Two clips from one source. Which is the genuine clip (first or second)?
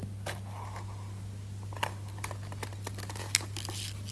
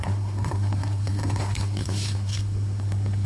first